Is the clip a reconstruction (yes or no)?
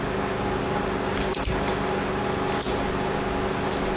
no